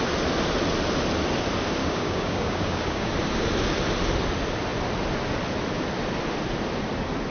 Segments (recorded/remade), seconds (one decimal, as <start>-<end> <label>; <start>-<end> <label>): 0.0-1.8 recorded; 1.8-3.1 remade; 3.1-7.3 recorded